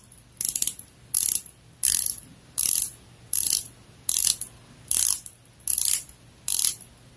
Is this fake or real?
real